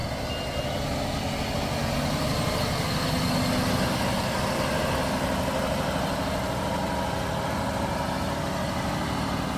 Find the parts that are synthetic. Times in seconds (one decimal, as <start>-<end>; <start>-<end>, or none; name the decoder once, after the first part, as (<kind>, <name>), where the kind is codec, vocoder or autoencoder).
none